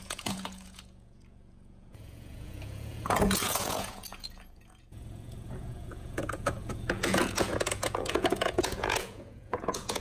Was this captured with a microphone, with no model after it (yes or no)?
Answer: no